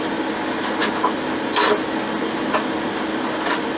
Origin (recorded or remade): recorded